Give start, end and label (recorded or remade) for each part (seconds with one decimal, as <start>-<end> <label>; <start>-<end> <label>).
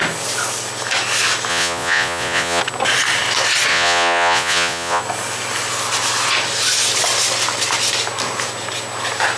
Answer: 0.0-1.5 recorded; 1.5-2.6 remade; 2.6-3.7 recorded; 3.7-5.0 remade; 5.0-9.4 recorded